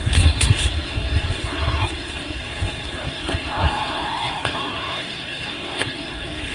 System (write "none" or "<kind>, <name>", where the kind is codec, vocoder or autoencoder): codec, SNAC